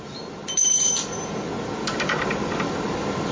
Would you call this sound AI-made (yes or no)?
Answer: no